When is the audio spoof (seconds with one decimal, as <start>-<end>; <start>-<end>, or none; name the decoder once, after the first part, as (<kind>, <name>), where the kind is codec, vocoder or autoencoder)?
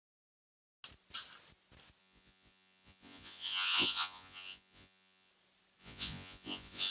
2.0-5.3 (vocoder, Vocos); 5.8-6.9